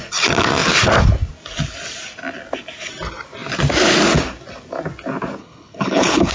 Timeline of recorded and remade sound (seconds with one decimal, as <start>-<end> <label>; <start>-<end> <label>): 0.0-5.4 recorded; 5.4-6.3 remade